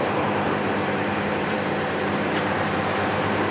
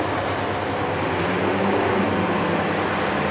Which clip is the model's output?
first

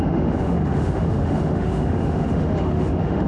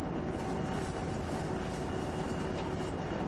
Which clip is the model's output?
first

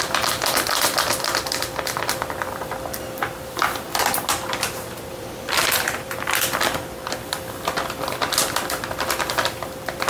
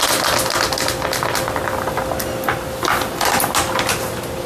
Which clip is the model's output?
first